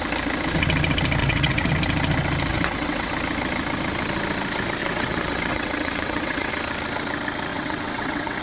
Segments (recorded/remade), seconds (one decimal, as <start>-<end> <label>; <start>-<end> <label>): 0.0-1.2 recorded; 1.2-1.7 remade; 1.7-2.5 recorded; 2.5-3.1 remade; 3.1-4.8 recorded; 4.8-6.5 remade; 6.5-7.5 recorded; 7.5-8.4 remade